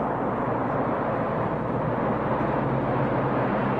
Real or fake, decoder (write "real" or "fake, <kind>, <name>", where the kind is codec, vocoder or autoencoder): real